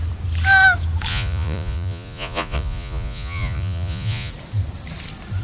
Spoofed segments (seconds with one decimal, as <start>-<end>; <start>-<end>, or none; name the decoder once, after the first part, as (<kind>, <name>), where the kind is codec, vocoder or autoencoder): 1.1-4.3 (vocoder, Vocos)